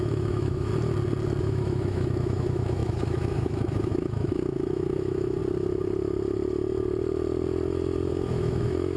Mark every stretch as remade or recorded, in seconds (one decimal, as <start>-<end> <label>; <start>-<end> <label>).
0.0-0.7 remade; 0.7-1.4 recorded; 1.4-5.4 remade; 5.4-8.1 recorded; 8.1-9.0 remade